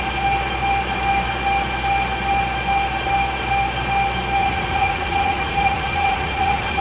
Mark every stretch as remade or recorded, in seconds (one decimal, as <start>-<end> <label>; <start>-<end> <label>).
0.0-4.4 recorded; 4.4-6.8 remade